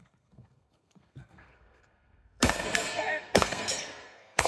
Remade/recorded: remade